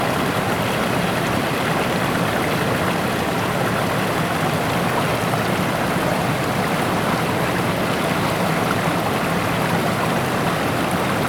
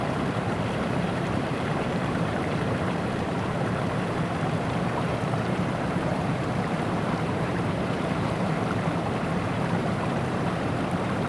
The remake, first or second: second